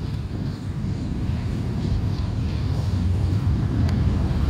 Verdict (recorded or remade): remade